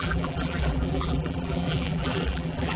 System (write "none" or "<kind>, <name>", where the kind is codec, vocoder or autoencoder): vocoder, BigVGAN v2